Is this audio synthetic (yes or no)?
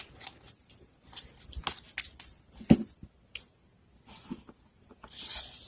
no